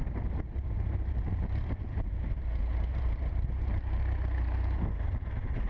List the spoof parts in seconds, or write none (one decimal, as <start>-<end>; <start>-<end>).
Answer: 0.0-2.4; 2.9-4.0